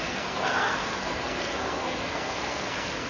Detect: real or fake fake